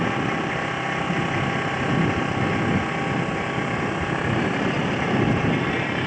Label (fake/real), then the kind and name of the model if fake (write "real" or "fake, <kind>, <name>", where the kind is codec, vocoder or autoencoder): real